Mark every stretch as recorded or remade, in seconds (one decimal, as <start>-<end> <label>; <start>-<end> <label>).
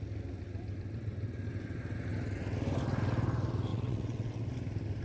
0.0-3.7 recorded; 3.7-4.4 remade; 4.4-5.0 recorded